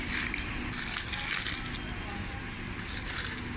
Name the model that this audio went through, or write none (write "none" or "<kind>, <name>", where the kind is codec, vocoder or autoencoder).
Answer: none